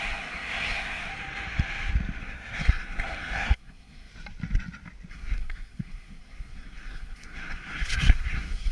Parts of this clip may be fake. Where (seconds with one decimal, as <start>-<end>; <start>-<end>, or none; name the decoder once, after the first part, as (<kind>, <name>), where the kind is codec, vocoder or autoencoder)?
0.0-1.1 (codec, SNAC); 2.2-4.1; 5.1-8.7